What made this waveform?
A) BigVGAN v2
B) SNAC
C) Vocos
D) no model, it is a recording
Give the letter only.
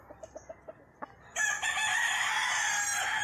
D